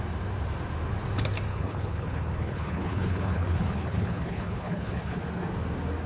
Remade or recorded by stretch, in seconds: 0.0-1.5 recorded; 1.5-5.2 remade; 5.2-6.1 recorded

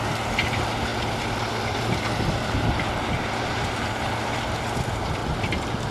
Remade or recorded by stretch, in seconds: 0.0-0.9 recorded; 0.9-4.4 remade; 4.4-5.2 recorded; 5.2-5.9 remade

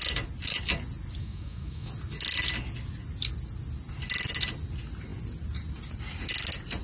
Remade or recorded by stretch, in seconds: 0.0-1.2 recorded; 1.2-1.9 remade; 1.9-6.8 recorded

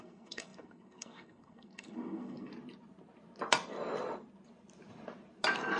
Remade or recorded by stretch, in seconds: 0.0-2.5 remade; 2.5-5.8 recorded

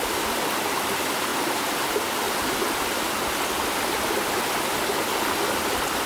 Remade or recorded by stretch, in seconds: 0.0-6.1 recorded